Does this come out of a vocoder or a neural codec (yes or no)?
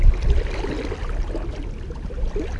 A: no